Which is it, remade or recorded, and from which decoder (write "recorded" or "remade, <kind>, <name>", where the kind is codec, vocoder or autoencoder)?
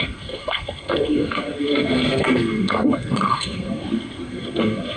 remade, codec, SNAC